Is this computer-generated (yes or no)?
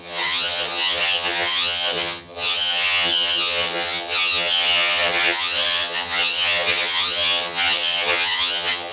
yes